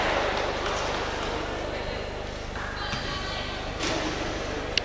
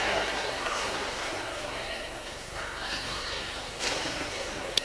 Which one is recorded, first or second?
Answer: first